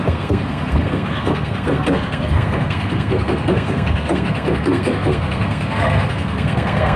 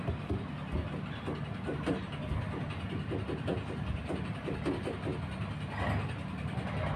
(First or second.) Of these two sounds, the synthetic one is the first